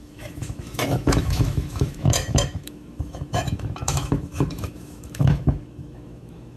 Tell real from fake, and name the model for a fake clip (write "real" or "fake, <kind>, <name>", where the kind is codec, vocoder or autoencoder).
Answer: fake, autoencoder, DAC-VAE